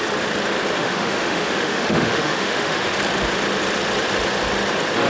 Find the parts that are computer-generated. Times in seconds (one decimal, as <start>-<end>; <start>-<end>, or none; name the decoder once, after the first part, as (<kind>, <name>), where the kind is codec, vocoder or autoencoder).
0.8-3.0 (autoencoder, DAC-VAE)